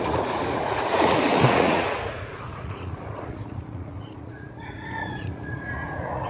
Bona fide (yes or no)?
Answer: no